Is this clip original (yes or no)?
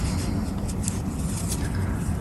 yes